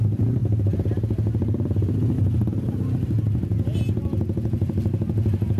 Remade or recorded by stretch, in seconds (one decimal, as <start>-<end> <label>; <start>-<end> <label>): 0.0-5.6 recorded